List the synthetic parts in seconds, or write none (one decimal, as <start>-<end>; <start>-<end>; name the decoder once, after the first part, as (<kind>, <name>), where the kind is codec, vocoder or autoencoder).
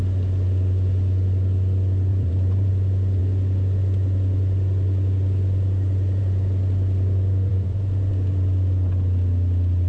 2.1-2.7 (vocoder, BigVGAN v2); 7.5-8.1